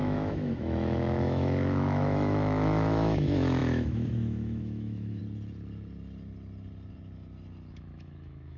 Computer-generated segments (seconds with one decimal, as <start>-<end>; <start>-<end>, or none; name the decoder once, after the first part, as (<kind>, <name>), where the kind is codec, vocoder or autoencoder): 0.0-5.2 (autoencoder, DAC-VAE); 7.7-8.6